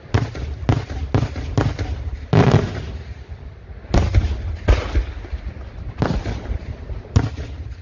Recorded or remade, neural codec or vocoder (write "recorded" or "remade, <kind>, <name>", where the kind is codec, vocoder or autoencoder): recorded